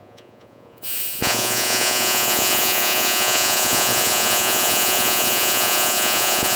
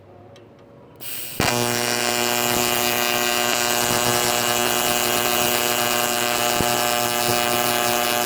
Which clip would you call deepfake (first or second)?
first